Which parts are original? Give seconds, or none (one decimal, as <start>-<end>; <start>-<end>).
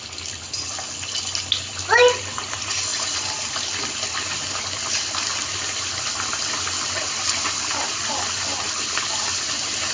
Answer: none